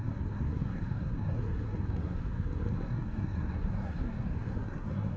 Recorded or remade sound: remade